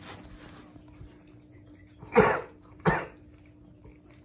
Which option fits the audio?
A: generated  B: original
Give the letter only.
B